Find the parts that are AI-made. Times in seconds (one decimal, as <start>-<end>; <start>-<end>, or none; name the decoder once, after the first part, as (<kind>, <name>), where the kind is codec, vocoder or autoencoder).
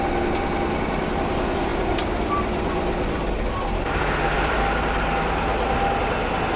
1.7-4.6 (vocoder, BigVGAN v2)